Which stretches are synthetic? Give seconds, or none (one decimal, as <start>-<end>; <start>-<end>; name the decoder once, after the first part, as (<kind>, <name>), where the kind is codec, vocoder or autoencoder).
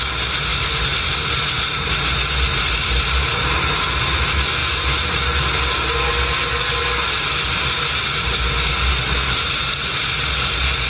none